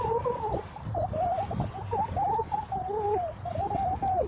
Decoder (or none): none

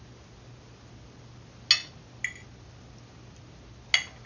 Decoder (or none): none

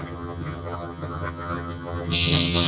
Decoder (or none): vocoder, HiFi-GAN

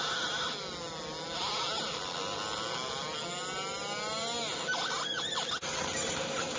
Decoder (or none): none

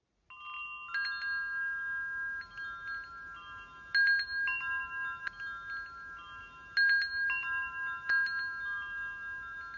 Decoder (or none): none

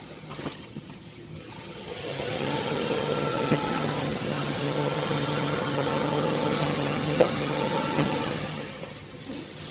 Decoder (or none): vocoder, HiFi-GAN